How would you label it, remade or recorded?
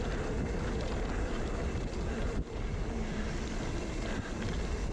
recorded